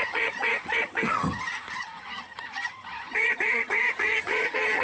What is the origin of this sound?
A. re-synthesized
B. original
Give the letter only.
A